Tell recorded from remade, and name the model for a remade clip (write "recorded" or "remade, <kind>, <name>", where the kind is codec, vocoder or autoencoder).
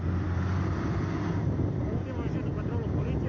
recorded